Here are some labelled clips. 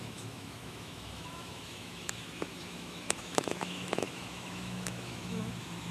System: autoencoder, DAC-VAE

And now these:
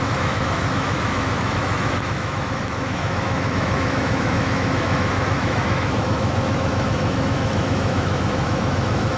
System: autoencoder, DAC-VAE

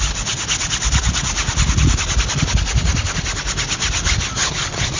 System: none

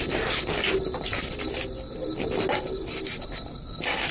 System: none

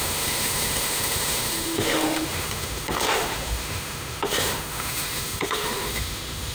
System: autoencoder, DAC-VAE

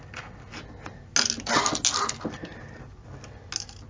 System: none